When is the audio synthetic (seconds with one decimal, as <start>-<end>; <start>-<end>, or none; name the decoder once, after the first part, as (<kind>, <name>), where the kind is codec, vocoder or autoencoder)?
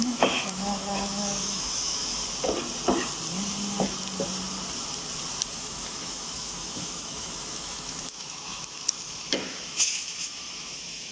0.0-2.2 (autoencoder, DAC-VAE); 5.6-11.1